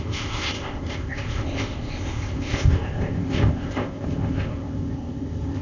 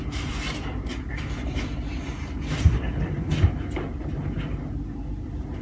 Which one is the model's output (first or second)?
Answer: first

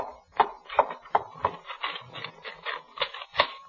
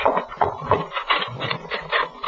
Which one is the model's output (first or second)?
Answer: second